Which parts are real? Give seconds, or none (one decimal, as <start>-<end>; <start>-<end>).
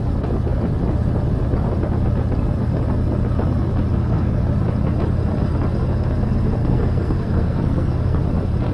0.0-3.9; 4.4-6.6; 8.2-8.7